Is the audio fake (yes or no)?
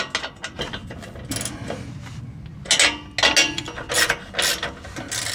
no